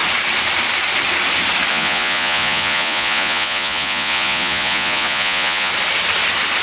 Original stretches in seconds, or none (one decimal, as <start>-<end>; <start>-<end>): 0.0-1.7; 5.7-6.6